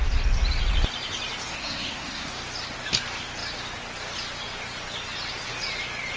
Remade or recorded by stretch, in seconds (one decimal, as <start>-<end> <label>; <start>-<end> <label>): 0.0-1.5 recorded; 1.5-2.3 remade; 2.3-6.2 recorded